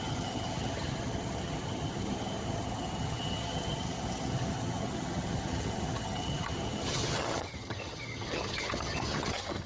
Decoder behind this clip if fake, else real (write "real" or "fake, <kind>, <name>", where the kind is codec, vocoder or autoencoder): fake, vocoder, HiFi-GAN